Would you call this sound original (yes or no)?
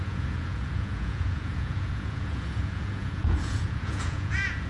no